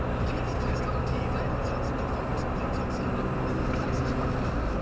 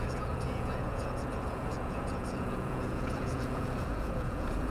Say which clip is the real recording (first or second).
first